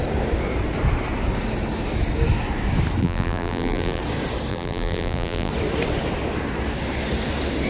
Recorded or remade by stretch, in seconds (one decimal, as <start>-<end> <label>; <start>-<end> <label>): 0.0-3.0 recorded; 3.0-4.0 remade; 4.0-4.5 recorded; 4.5-5.5 remade; 5.5-7.7 recorded